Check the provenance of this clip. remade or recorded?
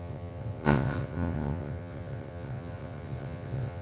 remade